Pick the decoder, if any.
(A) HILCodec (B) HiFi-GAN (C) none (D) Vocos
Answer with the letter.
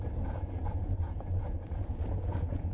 D